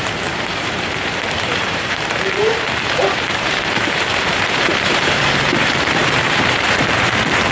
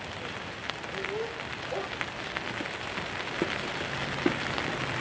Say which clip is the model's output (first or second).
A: first